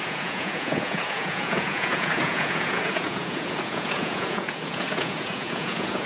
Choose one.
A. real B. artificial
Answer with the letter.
B